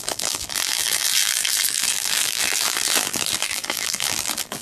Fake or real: fake